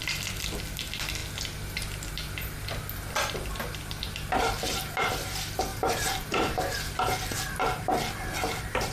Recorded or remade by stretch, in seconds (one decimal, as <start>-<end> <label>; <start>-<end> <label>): 0.0-5.7 recorded; 5.7-6.8 remade; 6.8-8.9 recorded